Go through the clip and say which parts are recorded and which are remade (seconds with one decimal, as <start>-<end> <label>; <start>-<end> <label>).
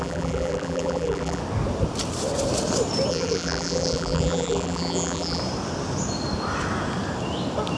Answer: 0.0-1.4 remade; 1.4-3.1 recorded; 3.1-5.4 remade; 5.4-7.8 recorded